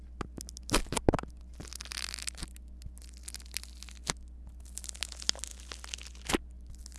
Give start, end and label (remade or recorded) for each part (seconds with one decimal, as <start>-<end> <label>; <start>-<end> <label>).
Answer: 0.0-7.0 recorded